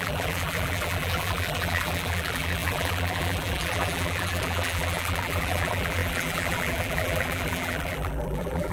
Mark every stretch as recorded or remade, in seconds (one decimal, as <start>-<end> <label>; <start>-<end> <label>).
0.0-8.7 remade